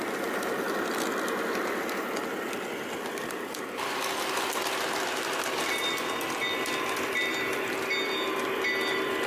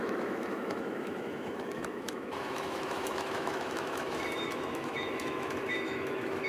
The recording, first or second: first